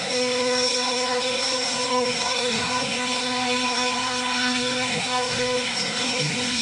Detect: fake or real fake